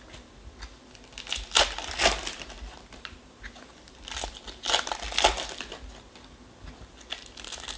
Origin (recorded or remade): recorded